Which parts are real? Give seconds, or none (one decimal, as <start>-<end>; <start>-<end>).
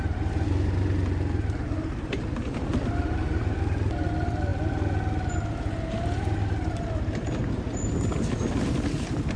0.0-9.4